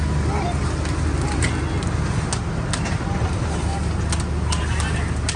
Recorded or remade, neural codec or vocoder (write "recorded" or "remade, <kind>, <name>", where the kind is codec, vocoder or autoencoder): recorded